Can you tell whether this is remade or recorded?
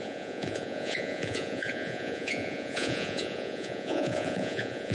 remade